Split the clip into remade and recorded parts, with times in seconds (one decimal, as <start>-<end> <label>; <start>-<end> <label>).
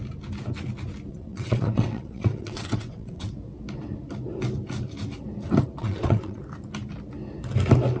0.0-1.1 recorded; 1.1-3.3 remade; 3.3-5.8 recorded; 5.8-6.4 remade; 6.4-8.0 recorded